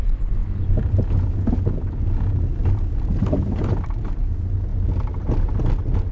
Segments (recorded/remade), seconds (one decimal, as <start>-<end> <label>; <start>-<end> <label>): 0.0-6.1 recorded